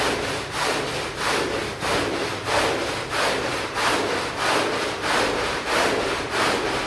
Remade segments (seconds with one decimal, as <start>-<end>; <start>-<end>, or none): none